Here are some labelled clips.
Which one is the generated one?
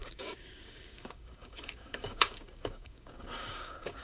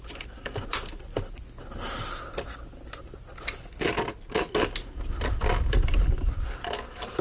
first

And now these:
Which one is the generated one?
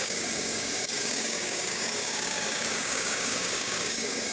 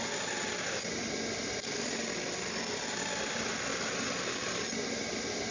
first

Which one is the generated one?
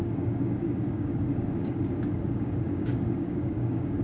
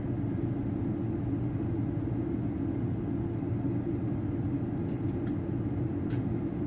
first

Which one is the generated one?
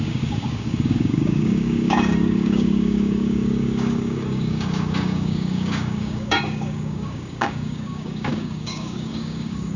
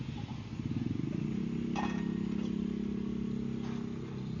first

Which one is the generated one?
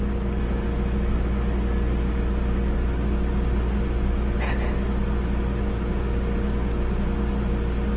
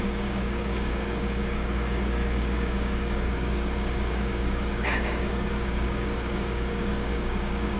second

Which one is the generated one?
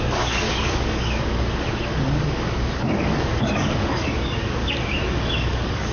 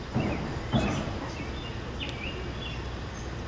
first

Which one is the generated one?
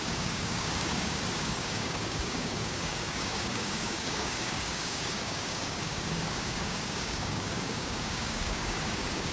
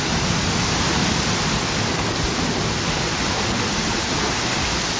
first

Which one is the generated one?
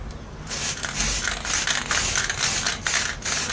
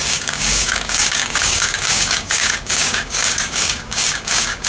second